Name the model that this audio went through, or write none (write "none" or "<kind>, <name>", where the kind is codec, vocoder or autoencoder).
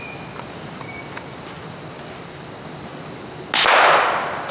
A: none